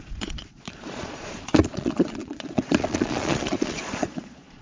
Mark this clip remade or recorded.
remade